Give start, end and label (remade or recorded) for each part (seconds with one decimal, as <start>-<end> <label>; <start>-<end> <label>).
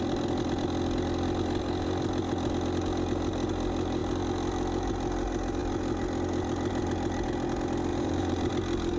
0.0-7.9 recorded; 7.9-8.5 remade; 8.5-9.0 recorded